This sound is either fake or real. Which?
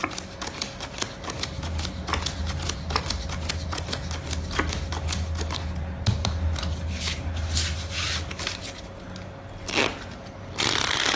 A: real